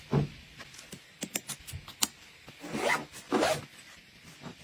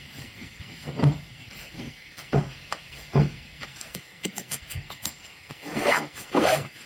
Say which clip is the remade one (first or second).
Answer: second